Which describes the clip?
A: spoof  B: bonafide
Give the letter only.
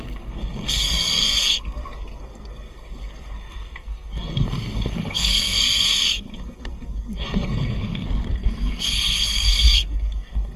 A